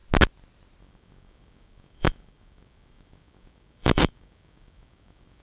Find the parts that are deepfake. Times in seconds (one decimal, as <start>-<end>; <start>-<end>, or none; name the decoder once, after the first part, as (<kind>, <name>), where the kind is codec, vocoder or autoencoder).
0.8-5.4 (codec, DAC)